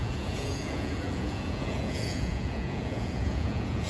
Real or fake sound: fake